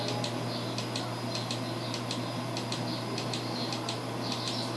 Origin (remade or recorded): recorded